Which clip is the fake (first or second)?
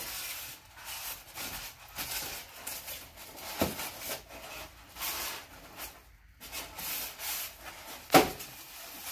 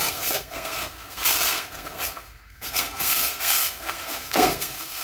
second